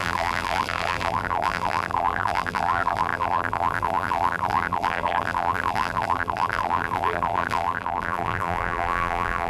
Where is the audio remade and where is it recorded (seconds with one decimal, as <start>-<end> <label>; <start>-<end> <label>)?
0.0-9.5 remade